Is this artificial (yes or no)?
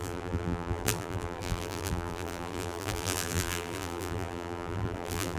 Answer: yes